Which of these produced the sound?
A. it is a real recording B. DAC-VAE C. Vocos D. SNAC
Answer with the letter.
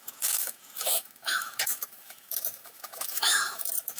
B